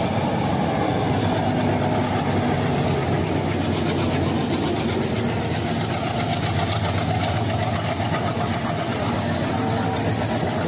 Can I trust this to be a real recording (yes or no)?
yes